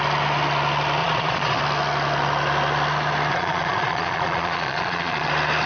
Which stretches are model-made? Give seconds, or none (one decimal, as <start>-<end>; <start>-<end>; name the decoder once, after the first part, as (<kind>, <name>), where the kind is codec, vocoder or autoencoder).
1.0-1.6 (vocoder, Vocos); 3.3-5.3